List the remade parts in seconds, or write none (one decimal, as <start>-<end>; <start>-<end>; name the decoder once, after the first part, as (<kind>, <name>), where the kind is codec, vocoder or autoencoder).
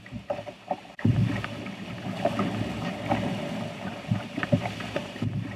0.0-1.2 (vocoder, BigVGAN v2); 3.7-5.6